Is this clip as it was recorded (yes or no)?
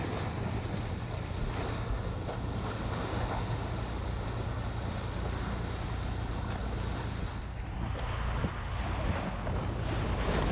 yes